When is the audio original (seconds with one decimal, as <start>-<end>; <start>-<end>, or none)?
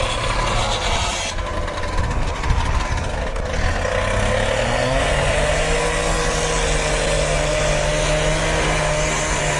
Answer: 0.0-9.6